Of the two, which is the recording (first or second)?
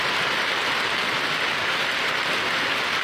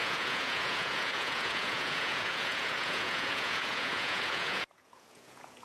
first